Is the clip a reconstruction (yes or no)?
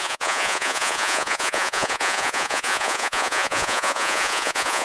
yes